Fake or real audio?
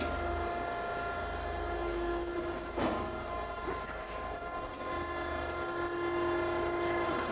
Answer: real